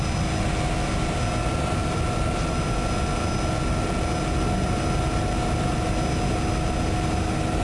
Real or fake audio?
real